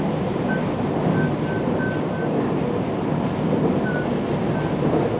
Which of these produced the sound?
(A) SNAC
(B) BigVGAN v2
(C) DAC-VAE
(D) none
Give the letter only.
D